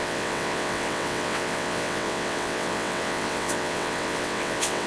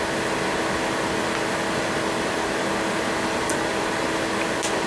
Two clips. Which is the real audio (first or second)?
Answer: second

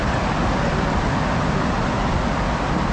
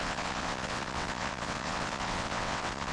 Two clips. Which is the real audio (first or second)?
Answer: first